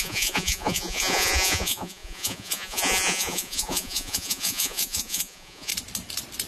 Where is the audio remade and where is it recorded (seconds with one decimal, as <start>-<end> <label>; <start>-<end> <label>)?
0.0-5.7 remade; 5.7-6.5 recorded